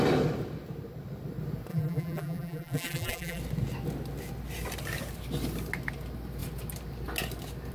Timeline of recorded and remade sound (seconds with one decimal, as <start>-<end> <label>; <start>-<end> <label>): 0.0-1.7 recorded; 1.7-3.4 remade; 3.4-7.7 recorded